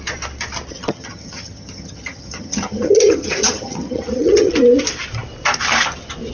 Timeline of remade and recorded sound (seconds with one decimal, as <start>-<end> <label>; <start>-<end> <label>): 0.0-0.7 recorded; 0.7-4.5 remade; 4.5-6.3 recorded